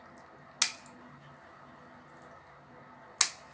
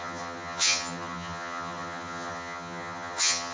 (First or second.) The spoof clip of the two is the second